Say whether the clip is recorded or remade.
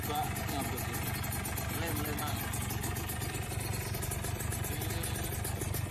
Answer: recorded